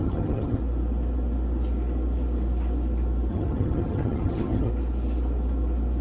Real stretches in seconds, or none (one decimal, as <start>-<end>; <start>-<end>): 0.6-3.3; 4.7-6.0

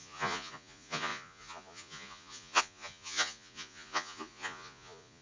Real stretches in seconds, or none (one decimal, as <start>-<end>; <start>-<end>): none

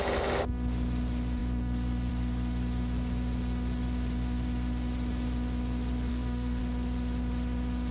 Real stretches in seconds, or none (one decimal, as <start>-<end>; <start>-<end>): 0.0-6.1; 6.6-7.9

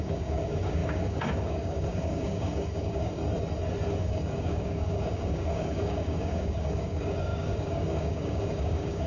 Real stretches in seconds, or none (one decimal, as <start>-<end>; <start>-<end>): 3.2-4.0